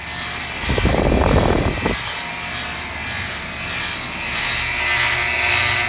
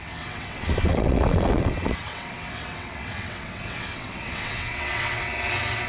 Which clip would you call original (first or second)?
first